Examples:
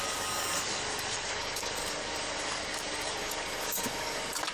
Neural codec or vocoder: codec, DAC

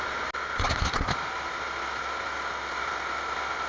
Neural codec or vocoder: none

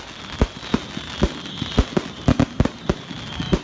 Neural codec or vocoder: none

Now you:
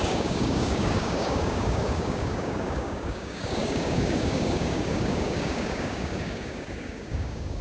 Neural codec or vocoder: codec, DAC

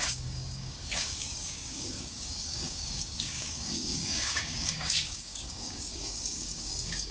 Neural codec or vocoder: codec, DAC